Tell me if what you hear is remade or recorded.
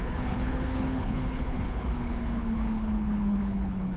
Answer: remade